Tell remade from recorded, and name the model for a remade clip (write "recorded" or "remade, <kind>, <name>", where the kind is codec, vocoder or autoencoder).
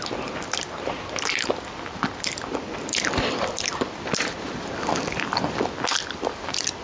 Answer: recorded